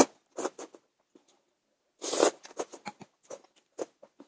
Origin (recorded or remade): recorded